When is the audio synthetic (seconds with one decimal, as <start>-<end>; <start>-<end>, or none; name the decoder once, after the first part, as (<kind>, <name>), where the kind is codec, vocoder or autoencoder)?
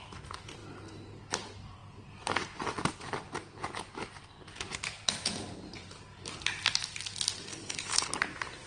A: 7.5-8.1 (codec, HILCodec)